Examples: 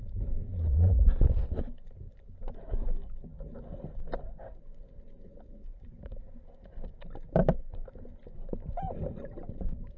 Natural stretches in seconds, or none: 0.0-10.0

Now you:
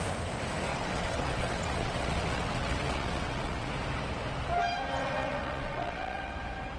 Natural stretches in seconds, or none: 0.0-0.7; 3.7-5.0; 6.3-6.8

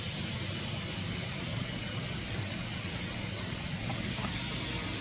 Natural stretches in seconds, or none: 0.0-1.5; 4.1-5.0

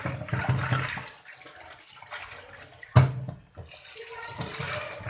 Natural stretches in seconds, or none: 0.0-5.1

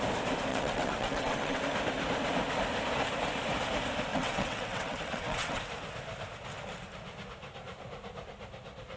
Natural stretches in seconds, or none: 0.0-0.5; 1.6-4.1; 5.6-9.0

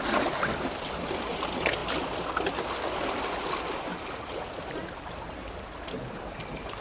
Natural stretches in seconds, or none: 0.0-6.8

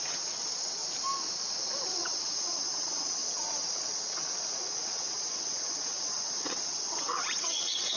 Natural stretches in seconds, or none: 0.8-1.9